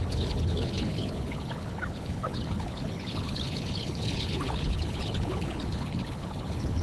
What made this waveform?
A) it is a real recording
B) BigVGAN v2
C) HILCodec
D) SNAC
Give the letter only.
C